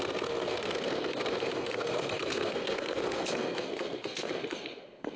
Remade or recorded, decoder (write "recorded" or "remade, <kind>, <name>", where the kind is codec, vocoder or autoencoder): remade, codec, SNAC